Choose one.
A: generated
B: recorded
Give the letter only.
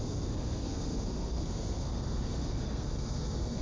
A